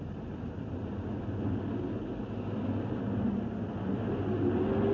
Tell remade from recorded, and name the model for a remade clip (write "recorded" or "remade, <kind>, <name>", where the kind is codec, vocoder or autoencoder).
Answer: recorded